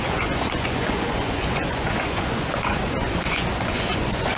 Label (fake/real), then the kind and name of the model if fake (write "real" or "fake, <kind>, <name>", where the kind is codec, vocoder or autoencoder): fake, vocoder, Vocos